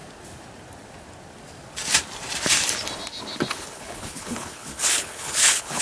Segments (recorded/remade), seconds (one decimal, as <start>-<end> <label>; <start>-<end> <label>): 0.0-3.5 recorded; 3.5-5.8 remade